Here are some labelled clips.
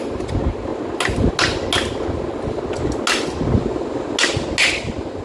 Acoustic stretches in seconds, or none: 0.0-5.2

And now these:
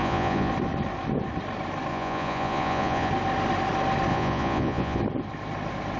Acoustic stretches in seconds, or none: 0.5-1.9; 3.1-4.1; 5.0-6.0

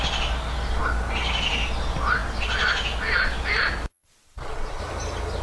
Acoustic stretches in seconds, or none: 0.0-3.9; 4.8-5.4